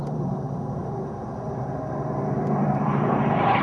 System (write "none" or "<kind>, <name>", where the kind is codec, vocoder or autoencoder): vocoder, BigVGAN v2